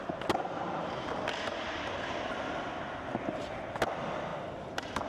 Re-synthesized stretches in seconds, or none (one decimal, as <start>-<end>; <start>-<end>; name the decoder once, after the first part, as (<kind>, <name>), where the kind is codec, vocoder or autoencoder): none